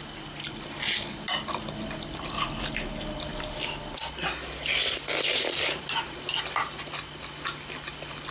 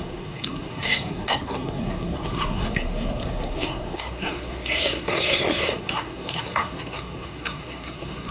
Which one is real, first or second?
first